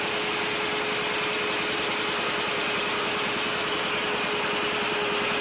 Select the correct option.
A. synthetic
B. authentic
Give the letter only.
B